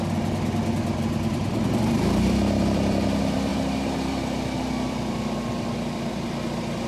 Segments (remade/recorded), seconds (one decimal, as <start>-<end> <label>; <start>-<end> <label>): 0.0-3.5 remade; 3.5-4.1 recorded; 4.1-6.9 remade